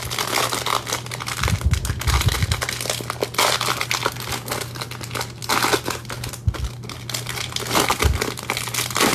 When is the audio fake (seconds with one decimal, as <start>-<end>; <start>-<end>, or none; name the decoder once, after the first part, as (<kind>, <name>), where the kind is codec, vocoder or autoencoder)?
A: none